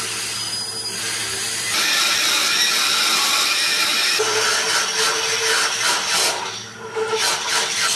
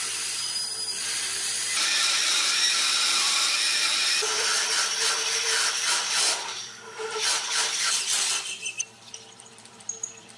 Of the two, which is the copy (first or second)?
second